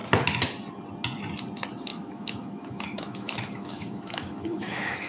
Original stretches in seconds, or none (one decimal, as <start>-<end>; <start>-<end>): 0.0-1.9